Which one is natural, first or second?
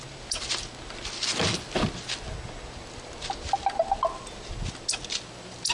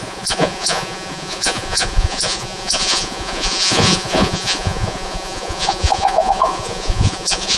first